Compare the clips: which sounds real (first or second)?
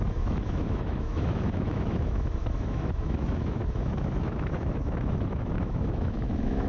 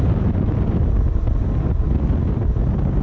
second